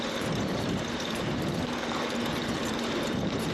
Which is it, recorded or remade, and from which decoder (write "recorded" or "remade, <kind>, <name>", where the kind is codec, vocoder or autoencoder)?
remade, vocoder, BigVGAN v2